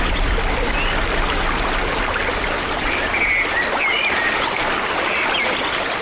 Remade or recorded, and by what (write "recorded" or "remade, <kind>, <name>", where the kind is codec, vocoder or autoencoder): recorded